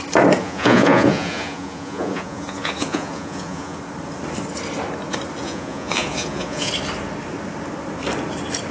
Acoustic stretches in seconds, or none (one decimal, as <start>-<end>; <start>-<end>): 0.0-0.4; 3.8-5.4; 6.7-8.7